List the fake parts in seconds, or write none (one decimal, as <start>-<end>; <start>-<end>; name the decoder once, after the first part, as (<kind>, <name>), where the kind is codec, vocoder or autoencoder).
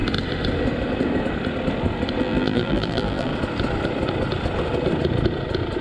2.2-3.3 (vocoder, BigVGAN v2)